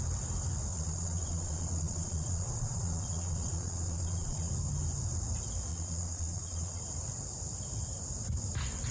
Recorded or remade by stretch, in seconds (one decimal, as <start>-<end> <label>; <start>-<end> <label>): 0.0-0.7 recorded; 0.7-4.5 remade; 4.5-5.7 recorded; 5.7-6.8 remade; 6.8-8.9 recorded

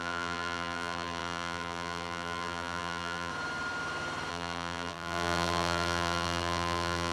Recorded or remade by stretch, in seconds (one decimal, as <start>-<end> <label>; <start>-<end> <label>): 0.0-3.3 remade; 3.3-4.3 recorded; 4.3-7.1 remade

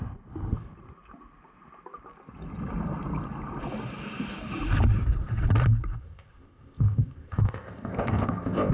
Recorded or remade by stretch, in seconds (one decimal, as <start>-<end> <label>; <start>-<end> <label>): 0.0-6.0 recorded; 6.0-8.7 remade

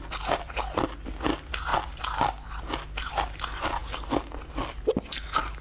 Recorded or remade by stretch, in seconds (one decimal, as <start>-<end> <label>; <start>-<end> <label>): 0.0-1.7 recorded; 1.7-3.1 remade; 3.1-5.6 recorded

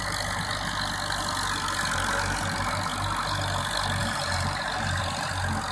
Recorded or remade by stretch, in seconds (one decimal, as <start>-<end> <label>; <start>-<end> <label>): 0.0-4.0 recorded; 4.0-5.3 remade; 5.3-5.7 recorded

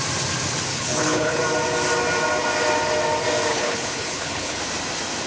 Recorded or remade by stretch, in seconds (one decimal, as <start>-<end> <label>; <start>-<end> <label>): 0.0-0.7 recorded; 0.7-1.4 remade; 1.4-3.5 recorded; 3.5-4.6 remade; 4.6-5.3 recorded